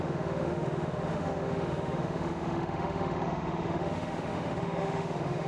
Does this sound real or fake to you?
fake